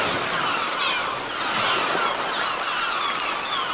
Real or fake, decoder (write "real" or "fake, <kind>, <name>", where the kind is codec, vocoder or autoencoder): real